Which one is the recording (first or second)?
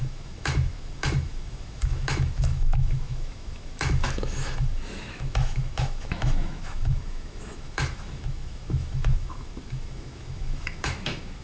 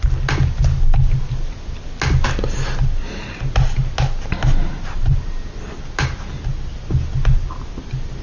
second